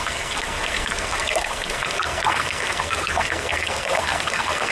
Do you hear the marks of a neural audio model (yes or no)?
yes